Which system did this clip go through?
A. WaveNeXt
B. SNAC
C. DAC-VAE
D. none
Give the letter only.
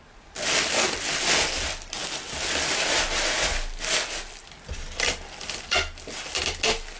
D